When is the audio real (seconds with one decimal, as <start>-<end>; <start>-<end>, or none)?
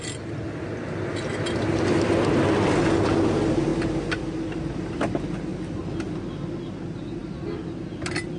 0.0-8.4